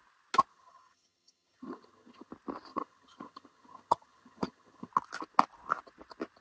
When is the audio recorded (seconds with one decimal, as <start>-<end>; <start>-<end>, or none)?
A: 0.0-0.5; 2.3-2.7; 4.9-6.4